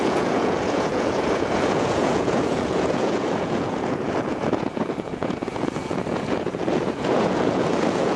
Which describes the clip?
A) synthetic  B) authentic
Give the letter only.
A